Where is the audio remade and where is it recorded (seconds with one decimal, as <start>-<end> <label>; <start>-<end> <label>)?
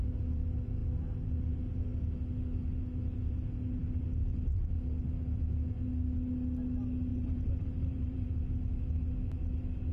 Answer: 0.0-7.1 recorded; 7.1-8.3 remade; 8.3-9.9 recorded